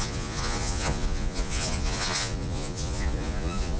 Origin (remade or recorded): remade